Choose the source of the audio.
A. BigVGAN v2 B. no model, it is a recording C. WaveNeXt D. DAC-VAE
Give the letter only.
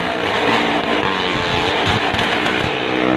B